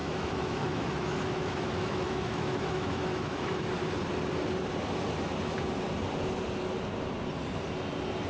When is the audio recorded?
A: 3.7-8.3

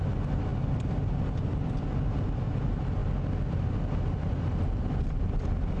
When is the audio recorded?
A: 0.0-5.8

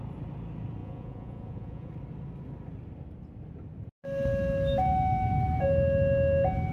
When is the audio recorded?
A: 0.0-0.8; 1.9-6.7